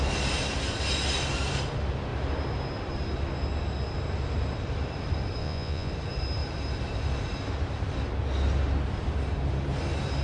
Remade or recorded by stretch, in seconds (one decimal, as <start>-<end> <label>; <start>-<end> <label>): 0.0-5.4 recorded; 5.4-5.9 remade; 5.9-10.2 recorded